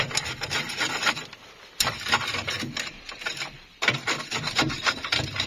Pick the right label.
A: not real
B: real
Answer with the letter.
A